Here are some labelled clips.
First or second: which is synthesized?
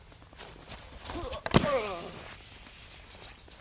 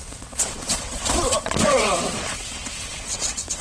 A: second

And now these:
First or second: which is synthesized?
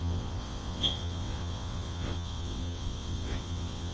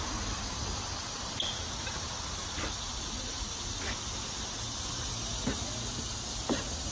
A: first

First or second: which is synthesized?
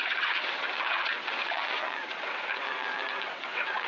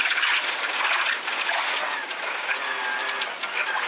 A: first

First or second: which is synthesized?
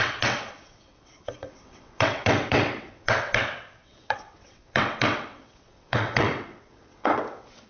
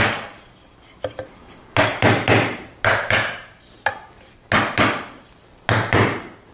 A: first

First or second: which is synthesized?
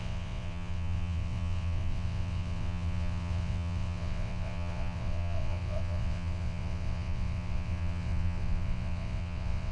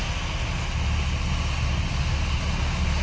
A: first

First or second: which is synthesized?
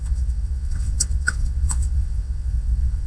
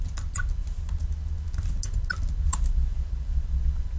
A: first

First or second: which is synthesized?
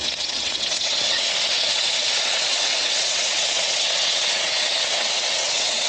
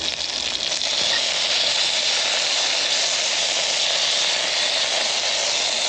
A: first